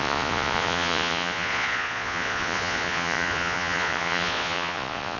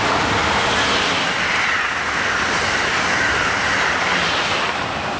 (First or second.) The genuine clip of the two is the second